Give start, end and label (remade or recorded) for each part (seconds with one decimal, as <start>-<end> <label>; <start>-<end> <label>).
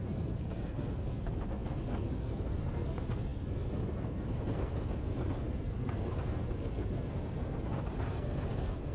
0.0-8.9 remade